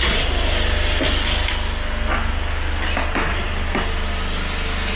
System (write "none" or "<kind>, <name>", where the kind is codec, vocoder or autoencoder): none